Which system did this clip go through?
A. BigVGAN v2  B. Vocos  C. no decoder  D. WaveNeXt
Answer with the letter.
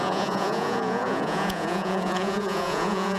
B